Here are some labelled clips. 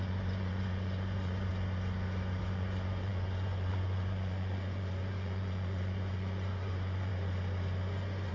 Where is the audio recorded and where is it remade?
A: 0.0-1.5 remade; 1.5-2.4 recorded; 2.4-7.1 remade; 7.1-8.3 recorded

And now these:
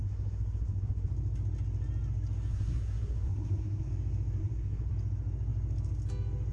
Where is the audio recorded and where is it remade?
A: 0.0-1.1 remade; 1.1-2.5 recorded; 2.5-3.9 remade; 3.9-4.4 recorded; 4.4-4.9 remade; 4.9-6.5 recorded

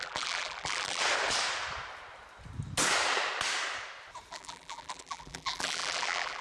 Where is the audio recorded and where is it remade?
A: 0.0-1.0 remade; 1.0-4.3 recorded; 4.3-6.4 remade

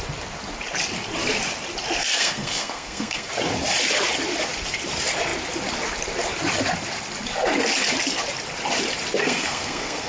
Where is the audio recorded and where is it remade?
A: 0.0-2.0 recorded; 2.0-3.3 remade; 3.3-9.2 recorded; 9.2-10.1 remade